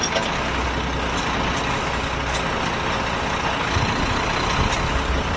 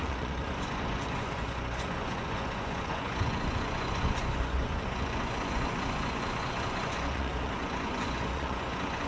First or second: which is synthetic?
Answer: second